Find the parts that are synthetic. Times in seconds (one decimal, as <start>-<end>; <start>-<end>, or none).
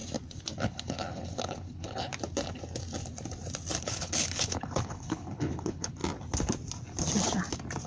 0.6-2.1; 3.8-6.0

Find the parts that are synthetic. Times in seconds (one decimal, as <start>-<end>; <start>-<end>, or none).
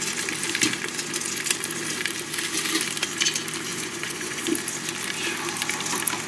3.7-4.5